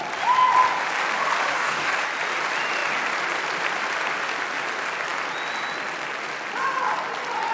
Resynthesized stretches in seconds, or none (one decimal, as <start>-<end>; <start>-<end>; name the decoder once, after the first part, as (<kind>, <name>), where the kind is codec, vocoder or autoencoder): 1.5-2.0 (codec, DAC)